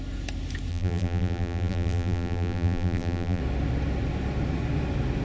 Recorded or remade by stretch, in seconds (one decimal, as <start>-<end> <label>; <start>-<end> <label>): 0.0-0.7 recorded; 0.7-3.4 remade; 3.4-5.2 recorded